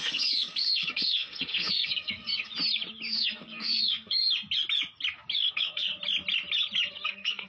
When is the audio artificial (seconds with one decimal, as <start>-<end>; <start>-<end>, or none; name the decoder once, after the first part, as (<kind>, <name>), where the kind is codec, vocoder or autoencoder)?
0.0-2.5 (codec, SNAC); 3.1-4.2; 5.5-5.9; 6.9-7.5